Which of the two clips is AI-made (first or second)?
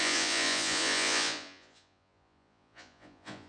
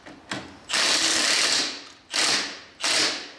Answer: first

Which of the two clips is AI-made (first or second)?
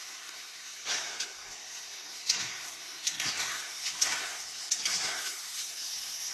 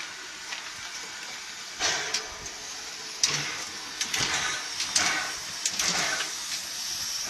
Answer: first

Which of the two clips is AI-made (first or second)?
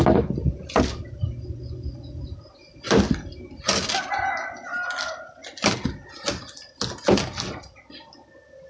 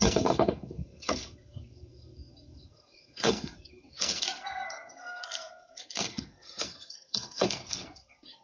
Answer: second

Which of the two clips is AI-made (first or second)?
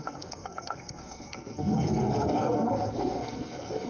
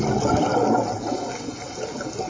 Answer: first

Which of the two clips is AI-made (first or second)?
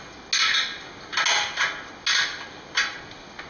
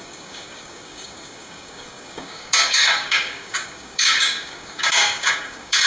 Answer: second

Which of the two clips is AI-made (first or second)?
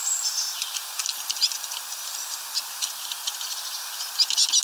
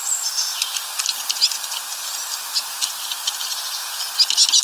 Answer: first